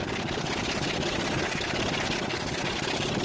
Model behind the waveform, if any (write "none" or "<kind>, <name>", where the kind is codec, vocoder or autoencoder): none